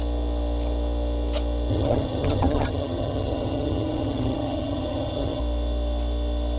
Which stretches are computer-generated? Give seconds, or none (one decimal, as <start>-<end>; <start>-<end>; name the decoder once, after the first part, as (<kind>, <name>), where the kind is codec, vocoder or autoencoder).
1.7-5.4 (vocoder, HiFi-GAN)